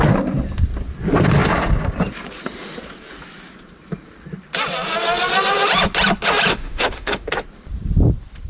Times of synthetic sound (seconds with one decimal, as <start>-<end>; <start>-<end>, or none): 6.5-7.3